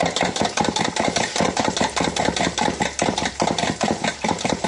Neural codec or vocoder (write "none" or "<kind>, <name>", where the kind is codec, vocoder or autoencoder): vocoder, BigVGAN v2